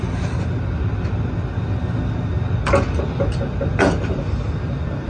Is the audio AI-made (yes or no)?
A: no